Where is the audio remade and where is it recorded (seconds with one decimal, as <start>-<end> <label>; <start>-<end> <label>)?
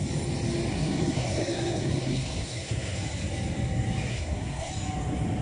0.0-0.7 recorded; 0.7-3.0 remade; 3.0-4.1 recorded; 4.1-4.7 remade; 4.7-5.4 recorded